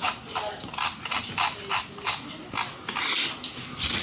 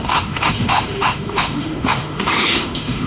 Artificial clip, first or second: second